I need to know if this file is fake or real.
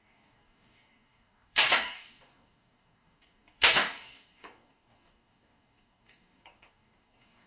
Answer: fake